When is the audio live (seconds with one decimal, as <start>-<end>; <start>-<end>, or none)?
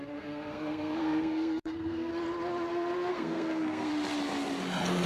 2.1-3.1; 3.9-5.1